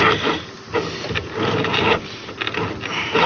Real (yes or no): yes